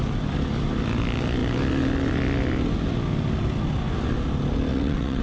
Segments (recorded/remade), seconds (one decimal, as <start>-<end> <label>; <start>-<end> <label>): 0.0-4.7 recorded; 4.7-5.2 remade